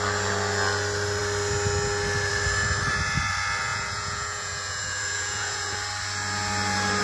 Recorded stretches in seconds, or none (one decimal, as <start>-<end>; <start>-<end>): 0.0-3.7; 5.7-7.0